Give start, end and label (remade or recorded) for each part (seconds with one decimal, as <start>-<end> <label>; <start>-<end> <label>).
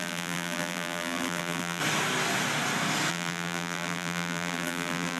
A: 0.0-1.8 remade; 1.8-3.1 recorded; 3.1-5.2 remade